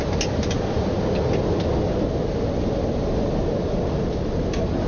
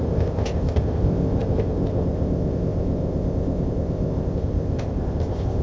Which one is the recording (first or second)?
first